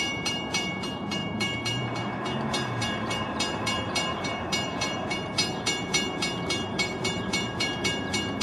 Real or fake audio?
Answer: fake